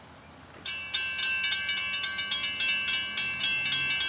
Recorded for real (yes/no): yes